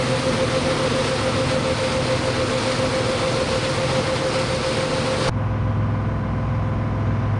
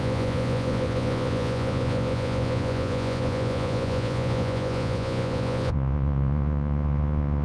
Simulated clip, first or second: second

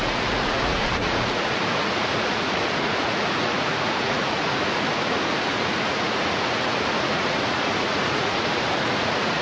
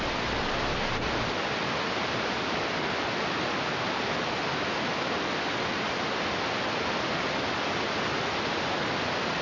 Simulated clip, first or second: first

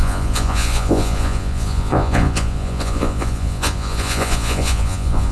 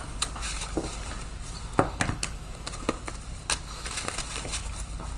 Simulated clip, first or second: first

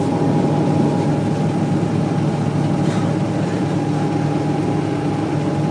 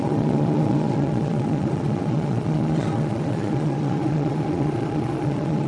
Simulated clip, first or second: second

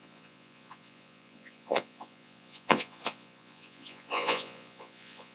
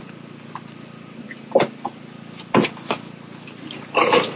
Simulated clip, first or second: first